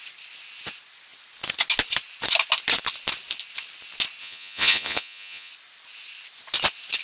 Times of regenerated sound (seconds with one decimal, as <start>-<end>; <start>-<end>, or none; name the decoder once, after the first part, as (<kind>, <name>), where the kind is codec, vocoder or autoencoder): 4.2-5.5 (vocoder, Vocos)